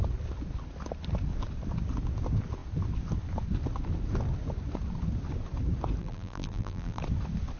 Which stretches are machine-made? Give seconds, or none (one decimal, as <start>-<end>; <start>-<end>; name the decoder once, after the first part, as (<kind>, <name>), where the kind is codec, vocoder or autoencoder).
6.0-7.0 (vocoder, BigVGAN v2)